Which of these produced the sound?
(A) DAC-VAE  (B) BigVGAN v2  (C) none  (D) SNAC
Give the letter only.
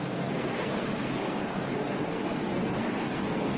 D